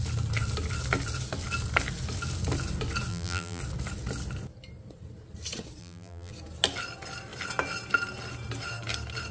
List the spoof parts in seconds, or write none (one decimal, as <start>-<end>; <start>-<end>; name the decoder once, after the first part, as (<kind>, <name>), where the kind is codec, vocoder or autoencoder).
3.1-3.6 (vocoder, BigVGAN v2); 5.8-6.3